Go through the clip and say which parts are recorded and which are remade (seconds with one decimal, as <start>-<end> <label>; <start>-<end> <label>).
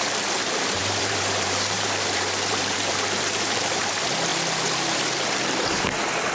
0.0-0.8 recorded; 0.8-3.8 remade; 3.8-6.3 recorded